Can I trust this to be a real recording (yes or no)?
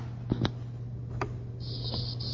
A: yes